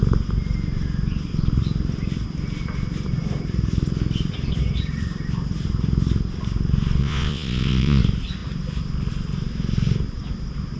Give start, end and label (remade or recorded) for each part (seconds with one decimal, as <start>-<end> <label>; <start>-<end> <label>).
0.0-7.0 recorded; 7.0-8.0 remade; 8.0-10.8 recorded